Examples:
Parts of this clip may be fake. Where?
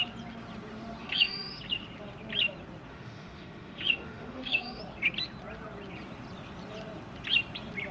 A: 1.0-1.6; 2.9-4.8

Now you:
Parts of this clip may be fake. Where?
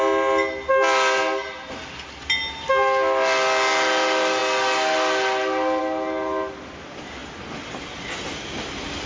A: none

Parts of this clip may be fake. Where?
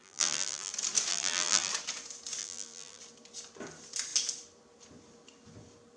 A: 0.0-0.7; 1.1-1.7; 2.4-3.0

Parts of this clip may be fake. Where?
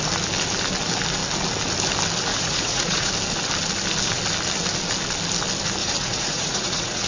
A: 2.3-3.1; 5.8-7.1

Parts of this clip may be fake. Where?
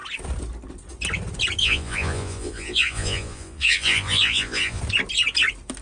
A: 1.6-4.8